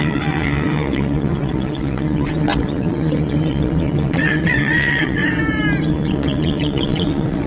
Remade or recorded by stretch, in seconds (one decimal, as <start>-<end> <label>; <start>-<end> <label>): 0.0-5.2 remade; 5.2-5.8 recorded; 5.8-7.5 remade